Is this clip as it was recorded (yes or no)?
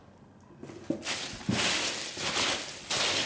yes